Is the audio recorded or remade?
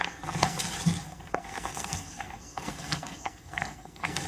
remade